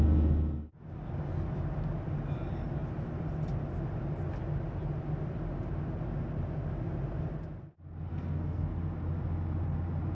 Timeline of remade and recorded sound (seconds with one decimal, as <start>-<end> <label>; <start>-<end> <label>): 0.0-8.1 recorded; 8.1-8.7 remade; 8.7-10.1 recorded